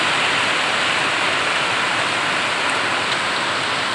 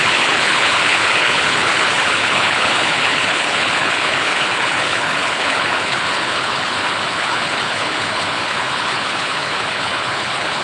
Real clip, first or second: first